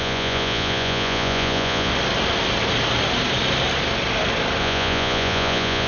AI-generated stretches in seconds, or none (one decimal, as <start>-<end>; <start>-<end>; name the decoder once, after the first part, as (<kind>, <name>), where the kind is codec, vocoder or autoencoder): 0.0-1.9 (vocoder, Vocos); 4.6-5.9